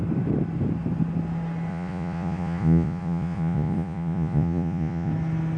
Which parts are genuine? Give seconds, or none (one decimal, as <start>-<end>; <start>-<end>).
0.0-1.7; 5.1-5.6